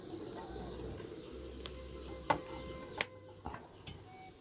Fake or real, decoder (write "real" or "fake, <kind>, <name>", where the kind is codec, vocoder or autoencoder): real